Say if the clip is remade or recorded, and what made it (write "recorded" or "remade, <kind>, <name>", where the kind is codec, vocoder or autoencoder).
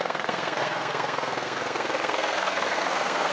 remade, codec, SNAC